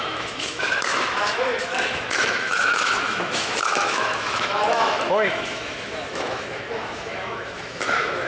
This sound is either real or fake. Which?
fake